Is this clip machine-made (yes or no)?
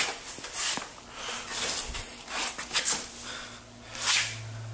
no